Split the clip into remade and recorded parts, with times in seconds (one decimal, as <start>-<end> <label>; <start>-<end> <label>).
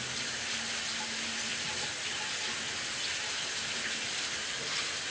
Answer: 0.0-5.1 recorded